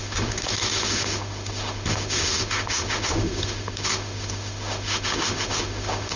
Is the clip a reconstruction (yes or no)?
yes